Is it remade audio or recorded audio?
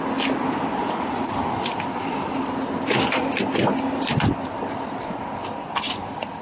recorded